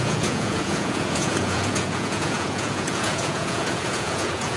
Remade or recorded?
remade